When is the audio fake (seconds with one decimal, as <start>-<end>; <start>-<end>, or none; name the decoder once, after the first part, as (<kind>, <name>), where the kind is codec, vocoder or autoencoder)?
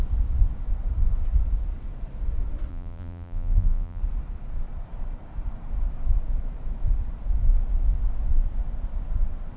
2.7-4.0 (vocoder, BigVGAN v2)